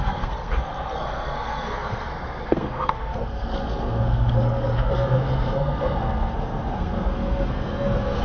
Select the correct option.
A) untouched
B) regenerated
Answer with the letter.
B